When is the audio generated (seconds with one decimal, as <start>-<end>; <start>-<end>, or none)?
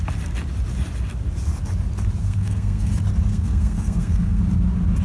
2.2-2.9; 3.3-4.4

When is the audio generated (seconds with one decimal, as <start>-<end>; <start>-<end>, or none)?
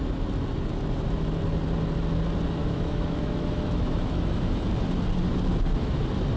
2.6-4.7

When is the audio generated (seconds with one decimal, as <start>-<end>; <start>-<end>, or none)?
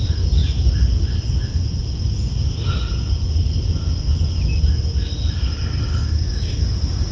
5.9-7.1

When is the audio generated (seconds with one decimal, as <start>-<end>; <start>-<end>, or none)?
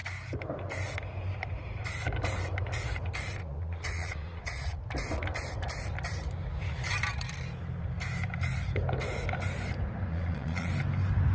3.4-4.8; 10.1-10.7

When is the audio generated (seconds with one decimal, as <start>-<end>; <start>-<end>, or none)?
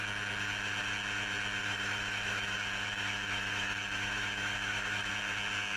1.6-5.1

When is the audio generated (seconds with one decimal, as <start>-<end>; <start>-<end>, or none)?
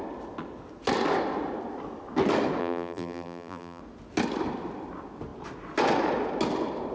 2.6-3.8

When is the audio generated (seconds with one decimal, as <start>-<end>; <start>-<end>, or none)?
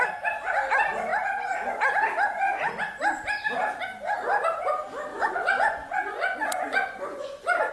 5.1-7.7